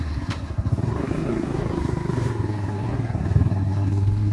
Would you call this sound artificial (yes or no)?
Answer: yes